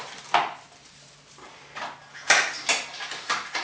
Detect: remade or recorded recorded